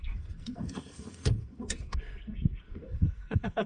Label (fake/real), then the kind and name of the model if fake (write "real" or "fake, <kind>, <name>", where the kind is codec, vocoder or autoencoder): fake, codec, SNAC